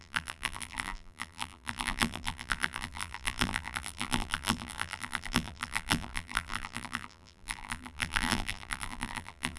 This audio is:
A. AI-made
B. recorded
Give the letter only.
A